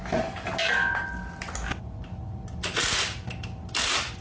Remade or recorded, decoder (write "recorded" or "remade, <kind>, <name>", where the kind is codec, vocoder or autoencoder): recorded